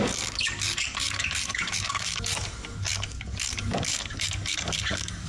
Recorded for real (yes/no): no